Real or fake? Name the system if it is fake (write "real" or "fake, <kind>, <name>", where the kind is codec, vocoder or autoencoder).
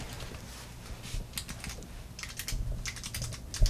real